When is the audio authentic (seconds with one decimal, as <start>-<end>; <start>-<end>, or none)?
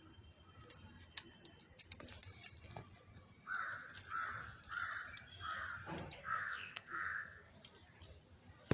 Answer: 0.0-6.2; 7.5-8.7